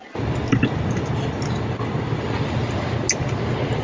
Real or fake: real